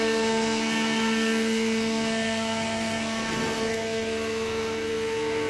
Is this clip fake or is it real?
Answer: fake